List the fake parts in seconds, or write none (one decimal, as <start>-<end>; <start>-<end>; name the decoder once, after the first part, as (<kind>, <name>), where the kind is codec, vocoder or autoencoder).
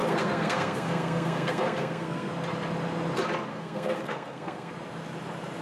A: 0.0-2.3 (codec, SNAC); 3.5-4.7